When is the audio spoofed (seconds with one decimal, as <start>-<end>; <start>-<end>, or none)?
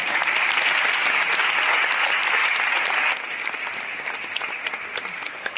none